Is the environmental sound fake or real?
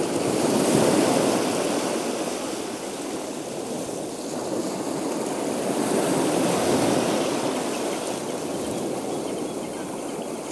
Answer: real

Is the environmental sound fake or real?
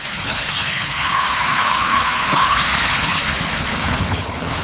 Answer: fake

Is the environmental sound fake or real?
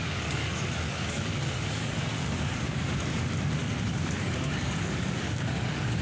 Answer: fake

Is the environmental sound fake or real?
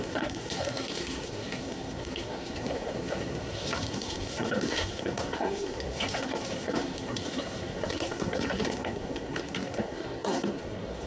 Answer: fake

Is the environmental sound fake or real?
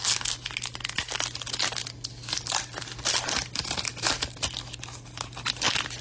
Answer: real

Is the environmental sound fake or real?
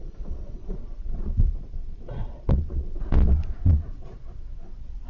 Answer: fake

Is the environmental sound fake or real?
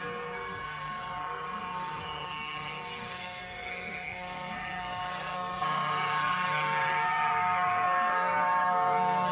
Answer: fake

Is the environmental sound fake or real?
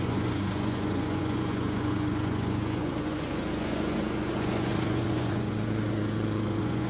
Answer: fake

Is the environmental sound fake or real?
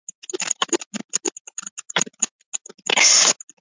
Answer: real